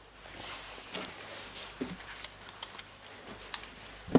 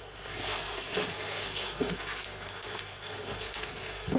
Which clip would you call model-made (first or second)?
second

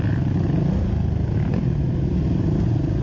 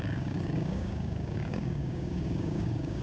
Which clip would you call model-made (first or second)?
second